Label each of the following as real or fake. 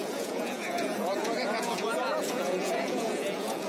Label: fake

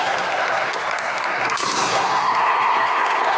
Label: fake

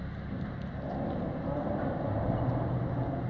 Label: real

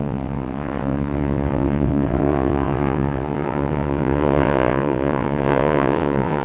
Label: fake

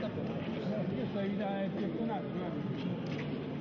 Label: real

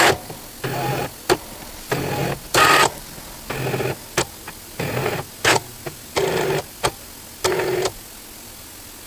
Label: real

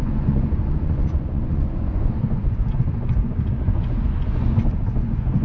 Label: fake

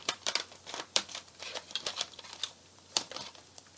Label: fake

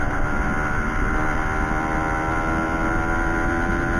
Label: real